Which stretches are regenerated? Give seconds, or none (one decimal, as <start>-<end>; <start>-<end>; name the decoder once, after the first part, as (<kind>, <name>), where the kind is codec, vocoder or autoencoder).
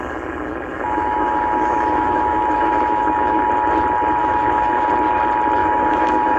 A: 0.7-3.5 (autoencoder, DAC-VAE); 4.2-4.9; 5.6-6.4